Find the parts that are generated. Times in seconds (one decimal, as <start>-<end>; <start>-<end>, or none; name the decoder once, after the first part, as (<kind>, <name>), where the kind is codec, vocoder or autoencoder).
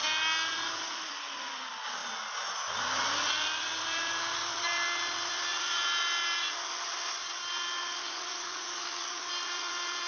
8.0-9.3 (codec, DAC)